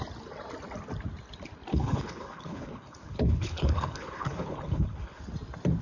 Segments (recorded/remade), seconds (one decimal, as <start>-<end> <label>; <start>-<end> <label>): 0.0-1.7 recorded; 1.7-5.2 remade; 5.2-5.8 recorded